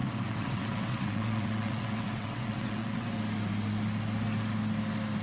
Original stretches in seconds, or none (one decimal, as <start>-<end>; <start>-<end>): 3.1-5.2

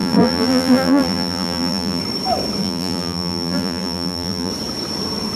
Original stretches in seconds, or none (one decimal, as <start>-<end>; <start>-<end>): 2.0-2.6; 4.5-5.4

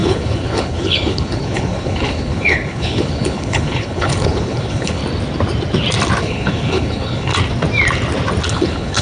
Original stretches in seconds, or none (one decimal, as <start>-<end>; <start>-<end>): 5.0-6.2; 7.3-8.5

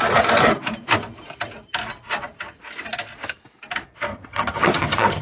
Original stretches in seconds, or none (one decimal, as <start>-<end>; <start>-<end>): 0.0-4.1

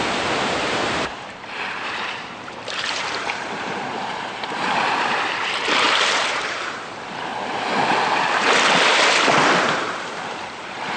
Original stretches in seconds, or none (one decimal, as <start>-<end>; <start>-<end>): 7.3-10.0

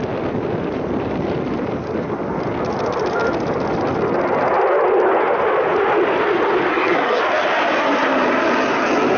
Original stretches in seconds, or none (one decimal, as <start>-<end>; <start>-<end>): 0.0-6.7; 7.2-9.2

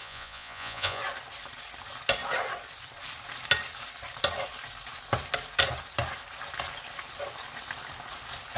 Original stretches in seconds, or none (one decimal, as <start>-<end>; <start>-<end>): 1.0-8.6